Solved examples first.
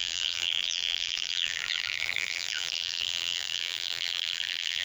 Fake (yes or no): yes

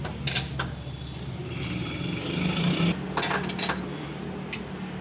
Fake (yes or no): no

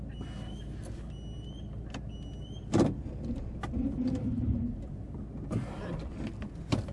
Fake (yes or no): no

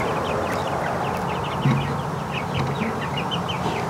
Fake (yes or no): no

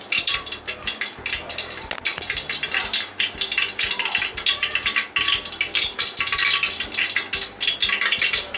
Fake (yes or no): no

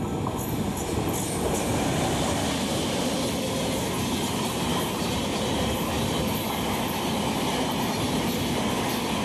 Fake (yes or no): no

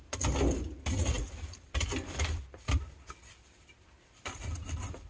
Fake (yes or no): no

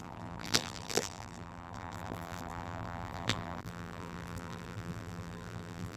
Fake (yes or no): yes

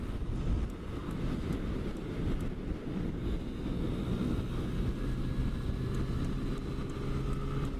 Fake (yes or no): no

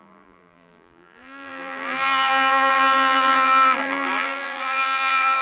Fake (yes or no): yes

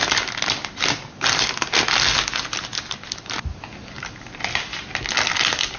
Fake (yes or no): no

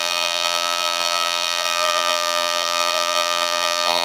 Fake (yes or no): yes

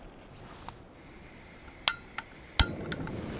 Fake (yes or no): no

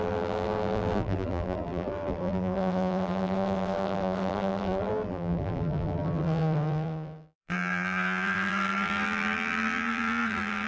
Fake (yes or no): yes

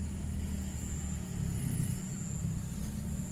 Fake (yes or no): no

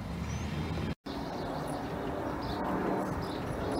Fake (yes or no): no